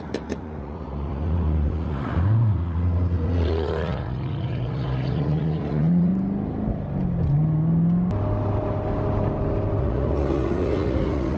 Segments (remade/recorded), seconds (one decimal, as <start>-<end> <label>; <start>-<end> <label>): 0.0-6.1 remade; 6.1-9.8 recorded; 9.8-11.4 remade